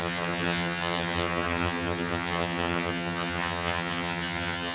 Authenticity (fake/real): fake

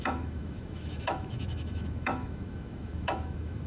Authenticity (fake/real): fake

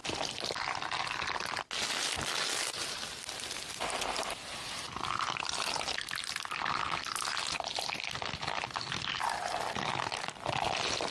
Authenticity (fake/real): real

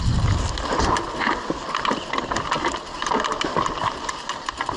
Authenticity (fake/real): real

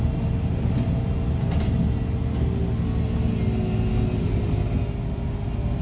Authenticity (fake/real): real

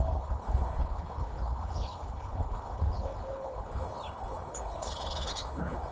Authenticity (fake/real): fake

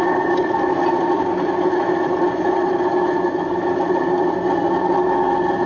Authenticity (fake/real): real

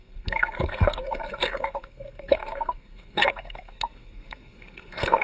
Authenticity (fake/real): fake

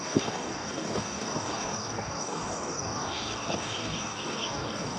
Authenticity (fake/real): fake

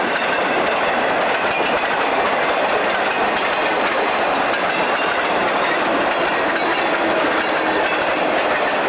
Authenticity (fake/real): real